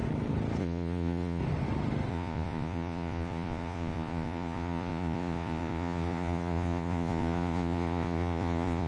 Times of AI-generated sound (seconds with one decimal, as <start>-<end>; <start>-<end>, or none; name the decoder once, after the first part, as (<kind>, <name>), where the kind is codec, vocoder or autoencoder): 0.6-1.4 (vocoder, Vocos); 2.1-8.9